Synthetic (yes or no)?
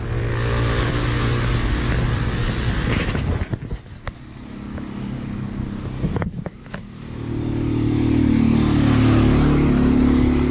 no